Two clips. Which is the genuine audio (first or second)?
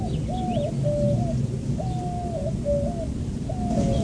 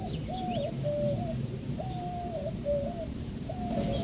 first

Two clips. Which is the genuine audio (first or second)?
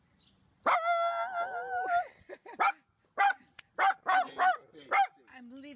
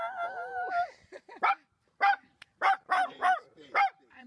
first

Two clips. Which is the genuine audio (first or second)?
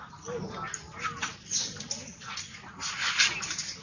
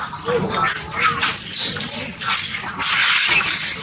first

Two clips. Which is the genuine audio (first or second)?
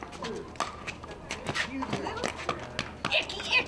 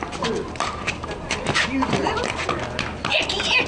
first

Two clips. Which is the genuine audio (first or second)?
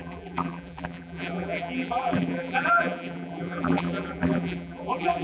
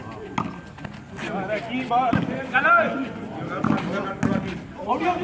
second